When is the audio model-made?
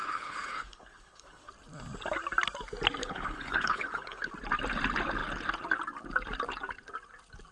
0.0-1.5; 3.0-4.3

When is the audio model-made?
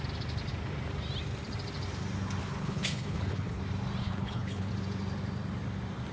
2.4-3.6; 4.0-4.7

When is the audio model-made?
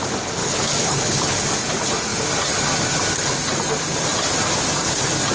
0.4-1.4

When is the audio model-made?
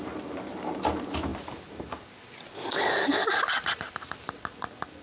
none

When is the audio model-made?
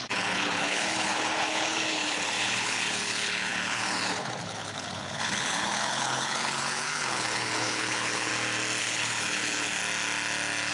0.0-8.3; 8.8-9.8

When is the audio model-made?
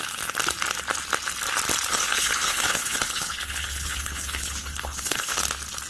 1.9-5.4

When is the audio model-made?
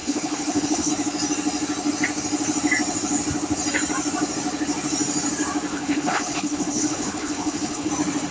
0.0-0.9; 5.7-7.9